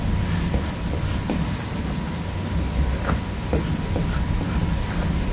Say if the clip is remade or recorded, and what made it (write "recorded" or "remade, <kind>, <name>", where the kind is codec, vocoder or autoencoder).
recorded